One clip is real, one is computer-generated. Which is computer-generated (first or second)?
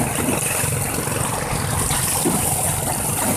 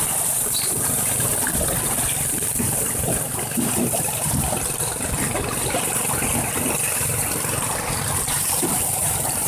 second